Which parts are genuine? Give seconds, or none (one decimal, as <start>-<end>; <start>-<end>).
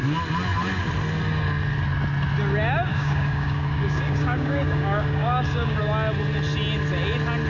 0.0-2.9; 5.8-7.5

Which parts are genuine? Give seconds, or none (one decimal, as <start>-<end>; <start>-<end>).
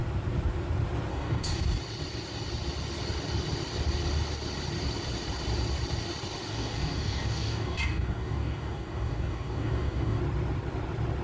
0.0-1.1; 1.6-6.5; 10.2-11.2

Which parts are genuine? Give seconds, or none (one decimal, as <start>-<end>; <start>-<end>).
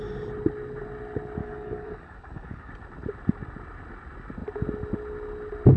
0.0-1.4; 2.7-5.8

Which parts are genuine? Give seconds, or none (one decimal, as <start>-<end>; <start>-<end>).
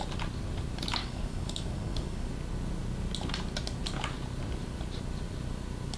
0.0-1.0; 2.3-6.0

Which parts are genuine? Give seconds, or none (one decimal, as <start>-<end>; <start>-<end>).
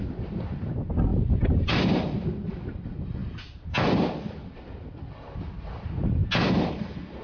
0.0-7.2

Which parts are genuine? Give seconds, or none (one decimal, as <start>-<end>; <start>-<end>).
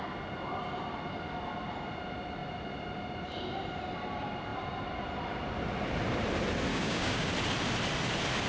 0.0-6.7; 7.3-8.5